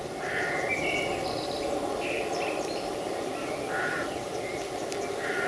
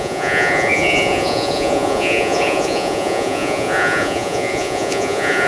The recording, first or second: first